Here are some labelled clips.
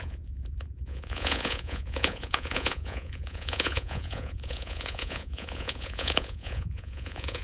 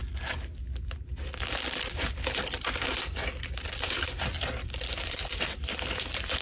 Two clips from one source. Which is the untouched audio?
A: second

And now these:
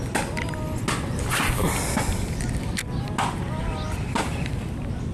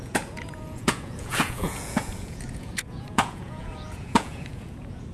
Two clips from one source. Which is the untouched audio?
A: first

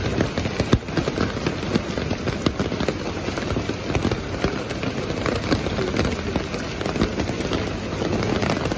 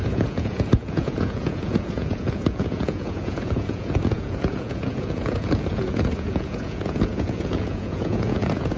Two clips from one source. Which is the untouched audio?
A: first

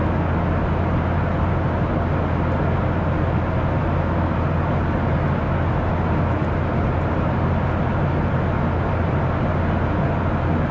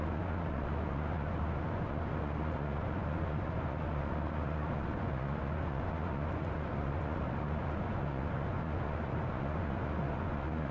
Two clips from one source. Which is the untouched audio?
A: first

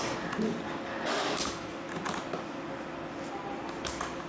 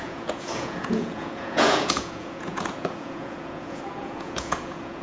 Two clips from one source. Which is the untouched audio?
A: first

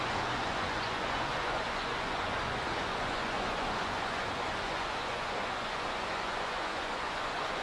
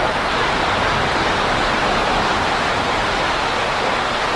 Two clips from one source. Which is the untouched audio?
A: second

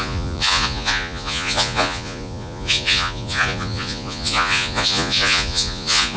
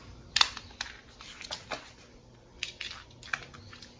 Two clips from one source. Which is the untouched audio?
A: second